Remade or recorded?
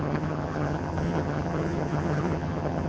remade